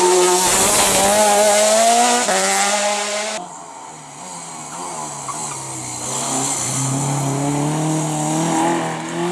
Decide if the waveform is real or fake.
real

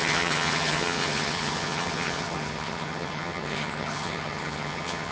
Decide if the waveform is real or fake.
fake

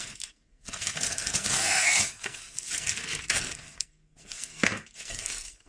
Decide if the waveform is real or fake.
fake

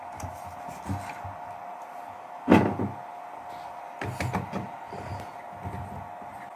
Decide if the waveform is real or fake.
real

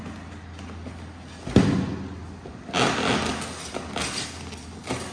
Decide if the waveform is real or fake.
real